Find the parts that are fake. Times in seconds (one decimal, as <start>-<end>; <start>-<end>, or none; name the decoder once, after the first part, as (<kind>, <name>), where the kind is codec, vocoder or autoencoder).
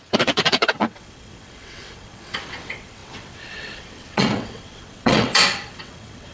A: 0.0-6.3 (vocoder, WaveNeXt)